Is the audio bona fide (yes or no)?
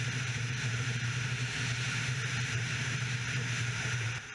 no